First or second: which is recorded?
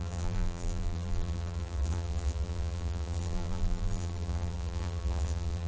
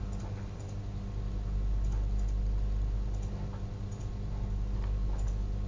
second